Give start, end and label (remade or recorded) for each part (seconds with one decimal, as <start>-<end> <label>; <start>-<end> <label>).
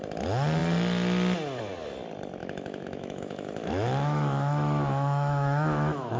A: 0.0-2.4 recorded; 2.4-6.2 remade